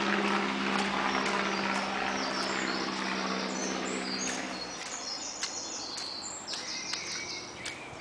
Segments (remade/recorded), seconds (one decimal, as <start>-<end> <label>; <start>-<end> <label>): 0.0-8.0 recorded